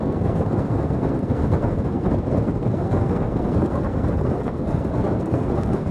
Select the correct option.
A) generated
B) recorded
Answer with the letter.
A